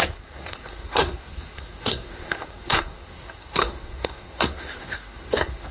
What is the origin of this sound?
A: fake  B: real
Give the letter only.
A